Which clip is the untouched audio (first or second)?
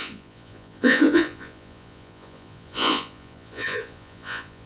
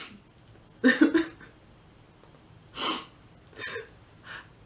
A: second